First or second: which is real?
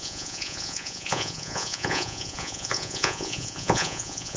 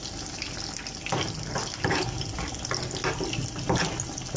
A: second